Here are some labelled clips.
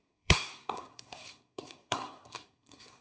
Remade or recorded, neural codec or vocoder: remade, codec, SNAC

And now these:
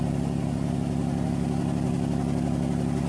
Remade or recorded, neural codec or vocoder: recorded